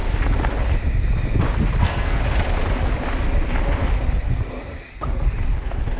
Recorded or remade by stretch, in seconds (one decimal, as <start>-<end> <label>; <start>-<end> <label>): 0.0-1.8 recorded; 1.8-2.2 remade; 2.2-6.0 recorded